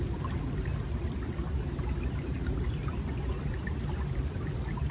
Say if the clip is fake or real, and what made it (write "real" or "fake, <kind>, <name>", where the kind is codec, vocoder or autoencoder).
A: real